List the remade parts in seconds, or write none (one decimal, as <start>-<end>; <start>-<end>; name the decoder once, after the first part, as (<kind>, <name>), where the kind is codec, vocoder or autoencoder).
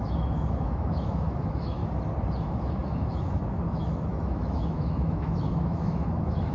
0.0-1.8 (autoencoder, DAC-VAE); 2.4-6.5